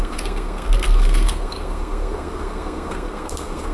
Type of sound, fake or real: fake